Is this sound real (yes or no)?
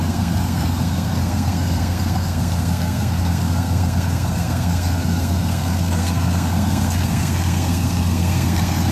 no